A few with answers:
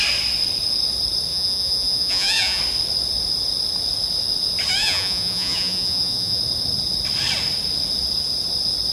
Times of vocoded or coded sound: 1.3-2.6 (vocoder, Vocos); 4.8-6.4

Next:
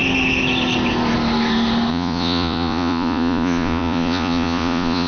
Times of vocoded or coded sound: 1.9-5.1 (vocoder, Vocos)

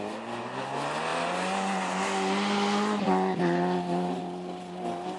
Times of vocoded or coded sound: none

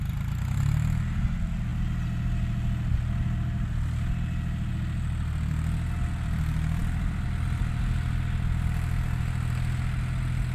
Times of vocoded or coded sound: none

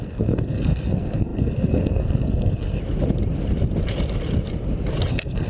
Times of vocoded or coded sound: 0.0-2.8 (codec, SNAC); 5.1-5.5

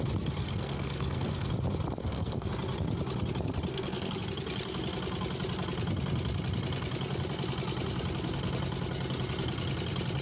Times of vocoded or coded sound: 0.4-1.5 (codec, SNAC); 2.0-2.5; 3.7-4.2

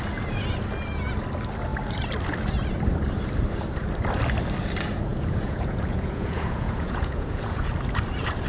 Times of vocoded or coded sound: 5.1-7.7 (vocoder, Vocos)